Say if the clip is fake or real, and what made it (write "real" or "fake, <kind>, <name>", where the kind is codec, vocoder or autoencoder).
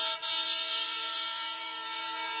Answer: fake, vocoder, BigVGAN v2